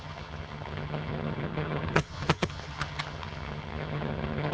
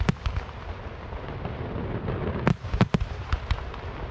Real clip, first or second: second